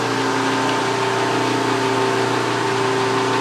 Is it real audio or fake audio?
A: real